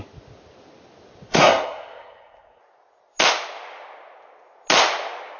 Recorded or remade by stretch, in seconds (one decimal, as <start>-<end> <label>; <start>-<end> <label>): 0.0-1.3 recorded; 1.3-2.6 remade; 2.6-5.4 recorded